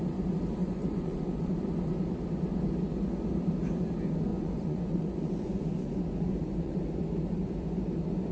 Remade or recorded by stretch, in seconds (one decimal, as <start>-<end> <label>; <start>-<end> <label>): 0.0-0.6 recorded; 0.6-1.5 remade; 1.5-4.3 recorded; 4.3-6.8 remade; 6.8-8.3 recorded